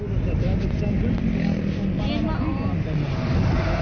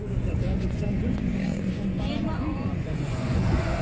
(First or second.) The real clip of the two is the first